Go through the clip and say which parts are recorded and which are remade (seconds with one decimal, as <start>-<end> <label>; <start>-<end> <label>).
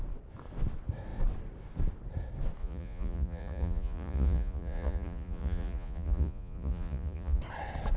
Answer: 0.0-2.6 recorded; 2.6-7.4 remade; 7.4-8.0 recorded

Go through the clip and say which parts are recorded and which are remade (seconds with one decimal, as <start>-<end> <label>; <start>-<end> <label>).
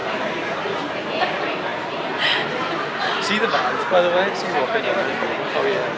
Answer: 0.0-0.7 remade; 0.7-6.0 recorded